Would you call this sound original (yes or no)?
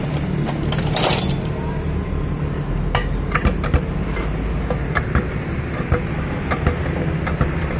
yes